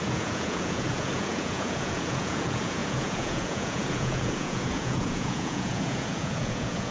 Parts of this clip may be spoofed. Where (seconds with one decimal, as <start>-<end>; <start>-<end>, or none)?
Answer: 0.0-6.9